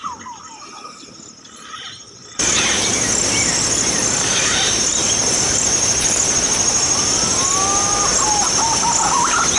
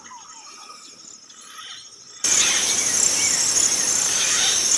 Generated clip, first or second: first